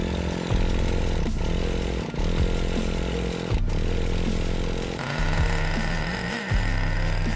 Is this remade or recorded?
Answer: recorded